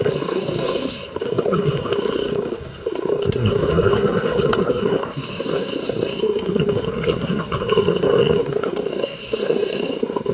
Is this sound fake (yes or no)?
yes